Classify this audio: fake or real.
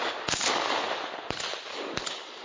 fake